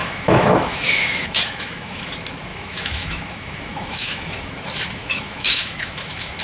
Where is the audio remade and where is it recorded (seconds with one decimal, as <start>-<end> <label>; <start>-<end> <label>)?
0.0-2.1 remade; 2.1-2.5 recorded; 2.5-4.5 remade; 4.5-5.0 recorded; 5.0-6.4 remade